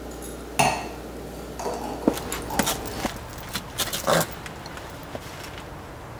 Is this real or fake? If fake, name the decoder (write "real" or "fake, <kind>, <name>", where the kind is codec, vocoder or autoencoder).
real